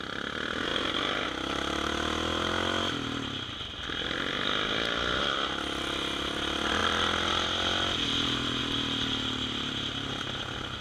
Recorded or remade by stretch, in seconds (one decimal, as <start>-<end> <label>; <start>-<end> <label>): 0.0-10.8 recorded